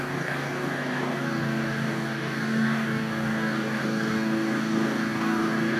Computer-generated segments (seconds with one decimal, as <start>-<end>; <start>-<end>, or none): 0.0-5.8